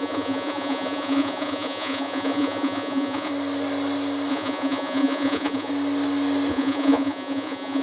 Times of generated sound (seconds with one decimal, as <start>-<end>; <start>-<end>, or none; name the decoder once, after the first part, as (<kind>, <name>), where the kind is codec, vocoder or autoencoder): 0.0-3.3 (vocoder, Vocos); 4.3-5.7; 6.5-7.8